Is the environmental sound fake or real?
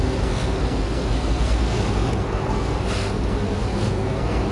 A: fake